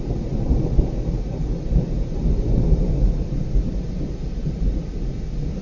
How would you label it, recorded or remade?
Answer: recorded